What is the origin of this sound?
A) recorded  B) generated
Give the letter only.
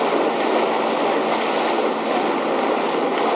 A